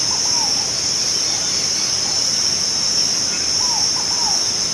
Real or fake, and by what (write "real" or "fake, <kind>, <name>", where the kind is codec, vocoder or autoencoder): real